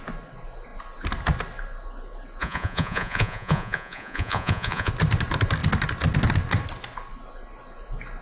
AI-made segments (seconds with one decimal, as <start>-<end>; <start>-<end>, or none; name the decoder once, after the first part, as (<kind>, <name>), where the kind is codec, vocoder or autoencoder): 2.4-4.9 (vocoder, Vocos)